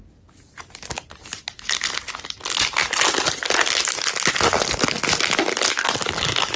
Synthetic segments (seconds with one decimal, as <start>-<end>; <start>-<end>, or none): none